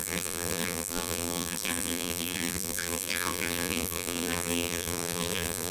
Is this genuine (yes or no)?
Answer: no